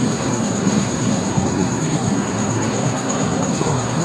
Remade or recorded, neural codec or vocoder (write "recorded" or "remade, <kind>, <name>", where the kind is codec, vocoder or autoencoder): remade, codec, SNAC